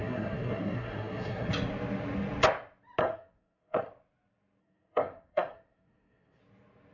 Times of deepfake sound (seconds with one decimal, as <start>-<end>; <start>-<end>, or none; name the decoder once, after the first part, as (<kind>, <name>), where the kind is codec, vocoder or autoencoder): 0.0-1.5 (codec, SNAC); 3.0-3.9; 4.6-6.4